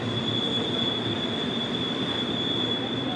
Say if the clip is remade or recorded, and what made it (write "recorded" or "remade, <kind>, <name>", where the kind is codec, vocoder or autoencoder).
remade, vocoder, BigVGAN v2